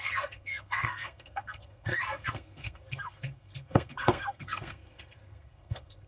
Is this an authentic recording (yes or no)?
no